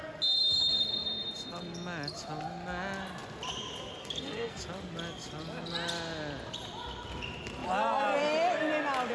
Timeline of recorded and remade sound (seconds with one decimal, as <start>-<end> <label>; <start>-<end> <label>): 0.0-4.0 recorded; 4.0-4.6 remade; 4.6-9.1 recorded